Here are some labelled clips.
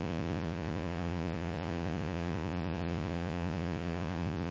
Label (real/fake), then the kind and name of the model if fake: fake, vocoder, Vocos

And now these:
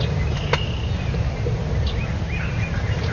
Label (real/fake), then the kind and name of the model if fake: real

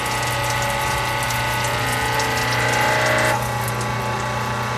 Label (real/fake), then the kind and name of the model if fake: real